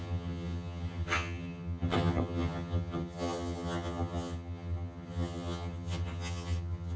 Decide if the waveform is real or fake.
fake